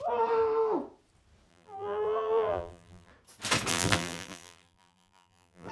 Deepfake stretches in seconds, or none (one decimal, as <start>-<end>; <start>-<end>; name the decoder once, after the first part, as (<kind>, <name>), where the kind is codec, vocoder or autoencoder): 1.5-3.1 (vocoder, BigVGAN v2); 3.7-5.7